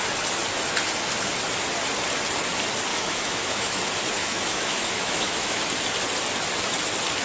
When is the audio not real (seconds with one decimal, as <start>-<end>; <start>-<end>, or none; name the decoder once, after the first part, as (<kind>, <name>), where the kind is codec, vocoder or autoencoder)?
2.9-3.8 (autoencoder, DAC-VAE); 4.2-5.6